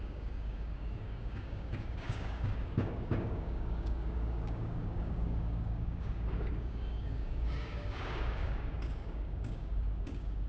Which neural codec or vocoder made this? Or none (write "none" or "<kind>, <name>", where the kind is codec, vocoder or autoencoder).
codec, DAC